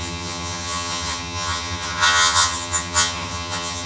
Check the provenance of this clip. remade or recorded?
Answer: remade